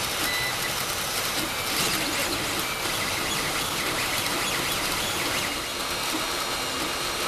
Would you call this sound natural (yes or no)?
yes